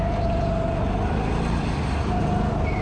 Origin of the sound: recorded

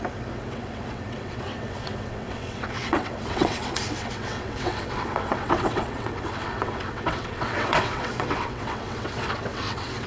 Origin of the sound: remade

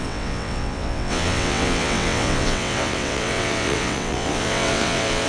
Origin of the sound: remade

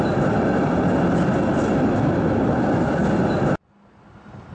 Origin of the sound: recorded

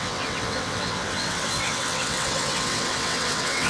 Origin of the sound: remade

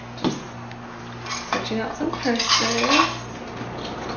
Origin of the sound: recorded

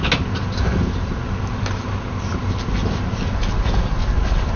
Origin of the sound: recorded